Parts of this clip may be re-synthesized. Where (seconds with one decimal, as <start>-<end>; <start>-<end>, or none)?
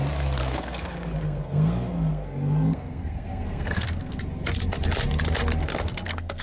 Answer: 0.4-4.2; 5.6-6.4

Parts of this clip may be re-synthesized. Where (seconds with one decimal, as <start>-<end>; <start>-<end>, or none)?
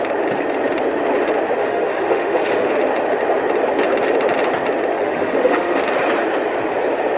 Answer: 1.6-2.7; 4.9-5.8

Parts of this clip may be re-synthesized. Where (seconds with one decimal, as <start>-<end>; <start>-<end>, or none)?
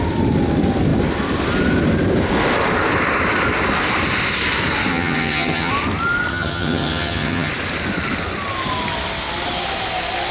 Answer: 4.9-5.7; 6.3-7.5